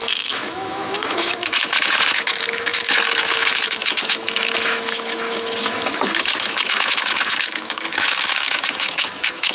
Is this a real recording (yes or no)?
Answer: no